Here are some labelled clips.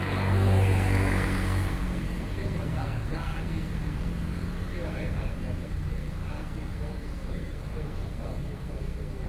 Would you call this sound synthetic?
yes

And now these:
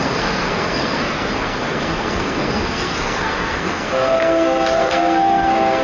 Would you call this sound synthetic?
yes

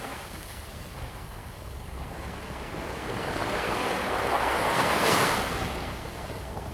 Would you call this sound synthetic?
yes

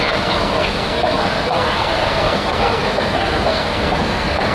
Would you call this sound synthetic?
yes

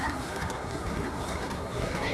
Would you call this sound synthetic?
yes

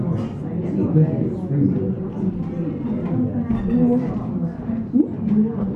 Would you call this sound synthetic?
no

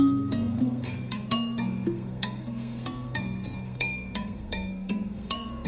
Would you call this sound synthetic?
yes